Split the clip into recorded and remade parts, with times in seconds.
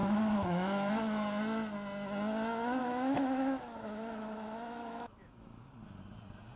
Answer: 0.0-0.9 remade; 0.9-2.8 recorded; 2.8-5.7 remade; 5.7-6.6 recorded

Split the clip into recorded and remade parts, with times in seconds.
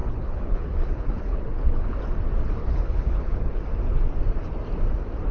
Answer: 0.0-2.0 remade; 2.0-2.6 recorded; 2.6-3.6 remade; 3.6-5.3 recorded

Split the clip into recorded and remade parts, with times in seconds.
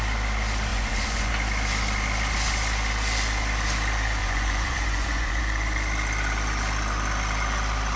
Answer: 0.0-0.7 recorded; 0.7-1.3 remade; 1.3-4.2 recorded; 4.2-5.4 remade; 5.4-8.0 recorded